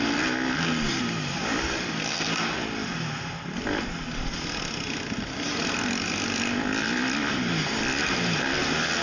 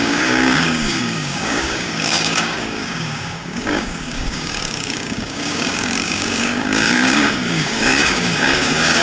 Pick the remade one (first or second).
second